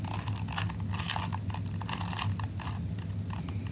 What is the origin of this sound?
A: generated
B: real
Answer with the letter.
B